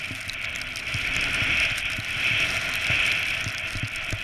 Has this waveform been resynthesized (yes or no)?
no